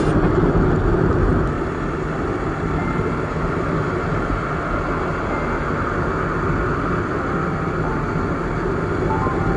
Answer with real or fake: real